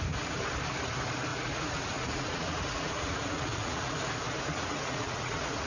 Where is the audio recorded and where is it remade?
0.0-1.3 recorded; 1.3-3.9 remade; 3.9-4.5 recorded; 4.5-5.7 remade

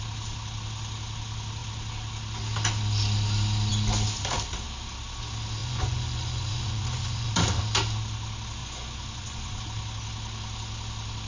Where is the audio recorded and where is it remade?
0.0-5.6 recorded; 5.6-7.3 remade; 7.3-8.6 recorded; 8.6-9.6 remade; 9.6-11.3 recorded